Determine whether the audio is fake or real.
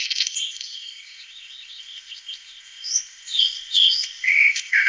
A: fake